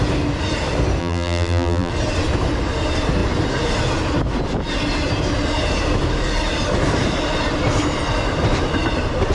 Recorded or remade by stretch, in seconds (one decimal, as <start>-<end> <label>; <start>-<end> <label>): 0.0-1.0 recorded; 1.0-1.9 remade; 1.9-9.3 recorded